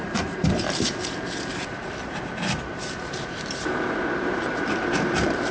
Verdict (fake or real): fake